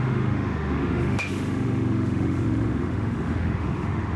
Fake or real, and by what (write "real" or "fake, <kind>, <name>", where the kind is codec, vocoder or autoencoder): fake, autoencoder, DAC-VAE